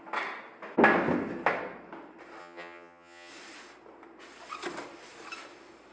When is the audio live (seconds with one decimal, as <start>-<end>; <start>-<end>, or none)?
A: 0.0-2.4; 3.3-5.9